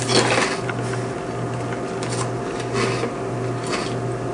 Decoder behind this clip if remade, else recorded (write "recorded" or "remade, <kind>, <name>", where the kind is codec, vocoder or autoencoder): recorded